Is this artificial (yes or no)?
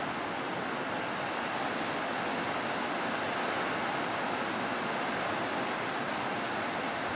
no